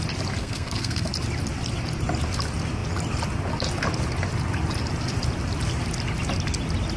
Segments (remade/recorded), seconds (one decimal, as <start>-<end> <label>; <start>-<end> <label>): 0.0-0.4 recorded; 0.4-1.1 remade; 1.1-7.0 recorded